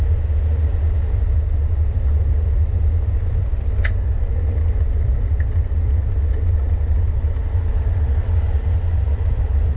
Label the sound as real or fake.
real